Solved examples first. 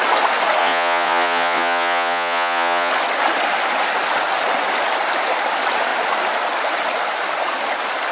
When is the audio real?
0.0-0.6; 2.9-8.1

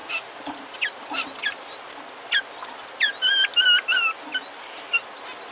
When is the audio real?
0.0-5.5

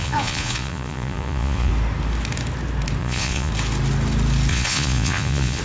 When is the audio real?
1.7-3.0; 3.5-4.5

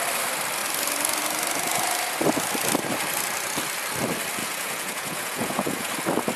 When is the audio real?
0.0-4.4; 5.9-6.4

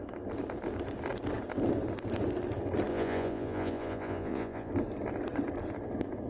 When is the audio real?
0.0-2.9; 4.7-6.3

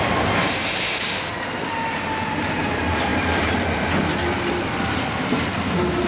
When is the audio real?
0.0-6.1

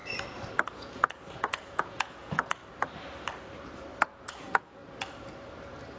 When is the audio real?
0.0-0.7; 2.6-4.3; 4.8-6.0

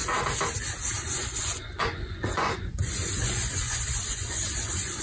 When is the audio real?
0.0-1.0